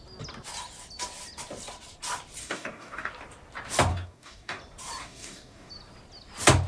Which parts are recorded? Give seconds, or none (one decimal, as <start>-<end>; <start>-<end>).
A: 0.0-2.4; 3.1-3.9; 4.6-5.0; 5.7-6.7